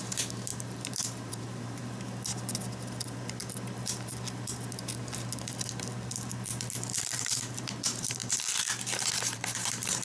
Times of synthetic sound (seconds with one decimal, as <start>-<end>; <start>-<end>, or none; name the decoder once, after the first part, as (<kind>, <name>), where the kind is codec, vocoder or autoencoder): 0.0-1.8 (vocoder, BigVGAN v2); 7.0-8.2; 9.2-10.0